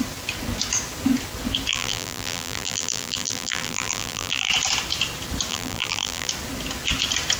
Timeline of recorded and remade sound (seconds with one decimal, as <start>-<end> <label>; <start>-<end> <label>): 0.0-1.7 recorded; 1.7-4.5 remade; 4.5-5.5 recorded; 5.5-6.3 remade; 6.3-7.4 recorded